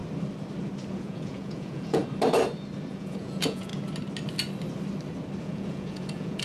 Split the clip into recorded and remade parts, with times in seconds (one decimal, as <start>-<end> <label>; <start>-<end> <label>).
0.0-0.9 recorded; 0.9-2.0 remade; 2.0-2.9 recorded; 2.9-3.7 remade; 3.7-5.4 recorded; 5.4-6.4 remade